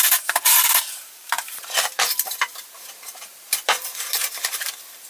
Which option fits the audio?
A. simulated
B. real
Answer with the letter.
A